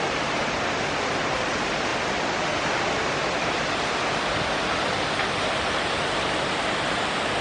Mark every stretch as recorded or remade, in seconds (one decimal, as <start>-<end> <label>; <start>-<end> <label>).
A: 0.0-1.9 remade; 1.9-5.7 recorded; 5.7-7.4 remade